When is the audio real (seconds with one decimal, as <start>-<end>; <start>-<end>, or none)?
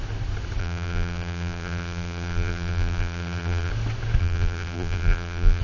0.0-0.6; 3.7-4.2